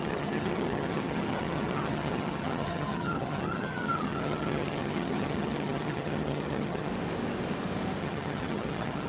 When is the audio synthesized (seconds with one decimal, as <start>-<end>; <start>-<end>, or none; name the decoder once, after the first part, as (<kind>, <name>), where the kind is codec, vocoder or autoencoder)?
0.0-6.9 (vocoder, HiFi-GAN); 8.0-9.1